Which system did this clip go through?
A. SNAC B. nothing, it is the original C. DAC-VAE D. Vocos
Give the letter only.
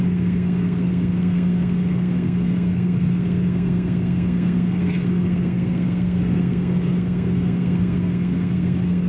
A